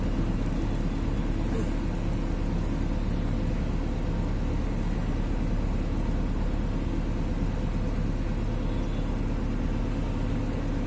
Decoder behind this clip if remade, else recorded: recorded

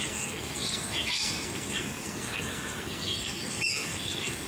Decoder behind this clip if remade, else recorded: remade, codec, SNAC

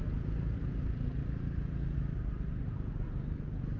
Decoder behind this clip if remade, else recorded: recorded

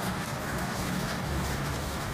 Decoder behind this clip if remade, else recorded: remade, codec, DAC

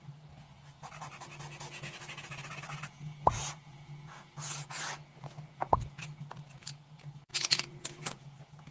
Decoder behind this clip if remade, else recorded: remade, vocoder, Vocos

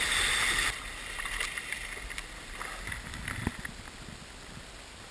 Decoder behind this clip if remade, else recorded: recorded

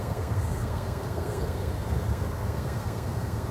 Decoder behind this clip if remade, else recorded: remade, codec, SNAC